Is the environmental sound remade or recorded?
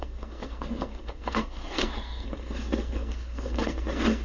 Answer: remade